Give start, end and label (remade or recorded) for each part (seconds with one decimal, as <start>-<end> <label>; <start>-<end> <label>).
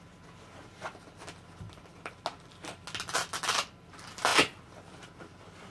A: 0.0-5.7 recorded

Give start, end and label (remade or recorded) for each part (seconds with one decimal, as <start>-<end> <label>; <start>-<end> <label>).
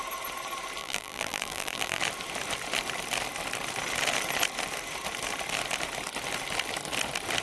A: 0.0-0.8 recorded; 0.8-2.0 remade; 2.0-7.4 recorded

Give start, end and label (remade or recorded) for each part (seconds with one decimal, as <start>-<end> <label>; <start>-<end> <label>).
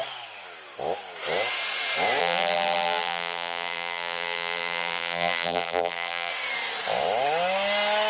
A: 0.0-2.2 recorded; 2.2-6.3 remade; 6.3-8.1 recorded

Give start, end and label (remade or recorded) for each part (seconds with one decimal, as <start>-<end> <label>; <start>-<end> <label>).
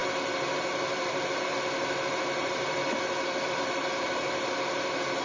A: 0.0-2.8 remade; 2.8-3.4 recorded; 3.4-5.2 remade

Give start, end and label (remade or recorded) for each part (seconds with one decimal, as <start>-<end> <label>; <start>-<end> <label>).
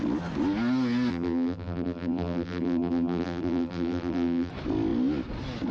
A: 0.0-1.1 recorded; 1.1-4.5 remade; 4.5-5.7 recorded